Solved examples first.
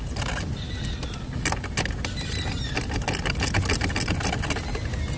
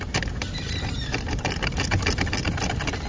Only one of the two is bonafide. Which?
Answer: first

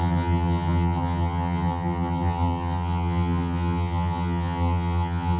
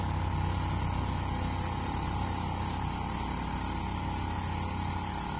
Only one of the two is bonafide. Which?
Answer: second